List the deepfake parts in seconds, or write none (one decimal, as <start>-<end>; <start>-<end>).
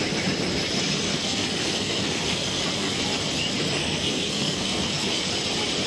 1.1-3.0; 3.8-5.2